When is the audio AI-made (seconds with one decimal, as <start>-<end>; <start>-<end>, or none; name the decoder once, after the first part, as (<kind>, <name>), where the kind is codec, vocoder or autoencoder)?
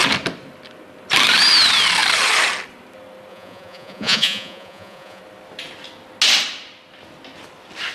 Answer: 3.3-5.2 (vocoder, Vocos)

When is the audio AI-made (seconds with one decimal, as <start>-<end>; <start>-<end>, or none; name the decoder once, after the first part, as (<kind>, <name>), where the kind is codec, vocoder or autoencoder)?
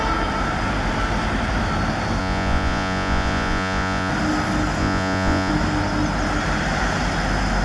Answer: 2.2-4.1 (vocoder, Vocos); 4.8-5.5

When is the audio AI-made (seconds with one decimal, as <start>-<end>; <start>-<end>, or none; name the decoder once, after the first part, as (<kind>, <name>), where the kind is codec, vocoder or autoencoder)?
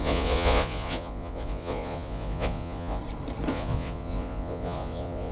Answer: 0.0-3.0 (vocoder, Vocos); 3.5-5.3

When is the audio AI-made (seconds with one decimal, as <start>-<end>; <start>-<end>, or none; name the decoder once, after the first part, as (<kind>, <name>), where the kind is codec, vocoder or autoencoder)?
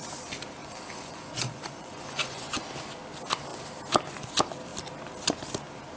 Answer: 0.6-2.6 (vocoder, Vocos)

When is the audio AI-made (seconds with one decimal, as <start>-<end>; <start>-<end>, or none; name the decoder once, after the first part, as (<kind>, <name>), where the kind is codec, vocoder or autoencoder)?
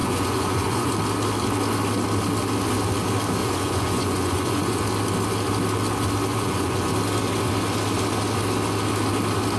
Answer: 0.0-0.9 (vocoder, Vocos); 3.4-4.8; 6.3-6.9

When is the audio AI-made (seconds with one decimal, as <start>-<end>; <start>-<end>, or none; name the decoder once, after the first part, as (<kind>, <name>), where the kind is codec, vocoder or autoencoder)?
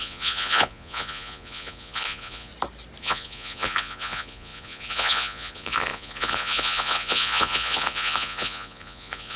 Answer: 0.0-2.5 (vocoder, Vocos); 3.0-9.4